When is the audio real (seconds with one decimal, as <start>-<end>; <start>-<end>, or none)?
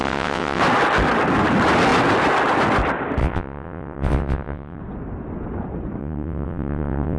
0.6-3.2; 4.8-6.0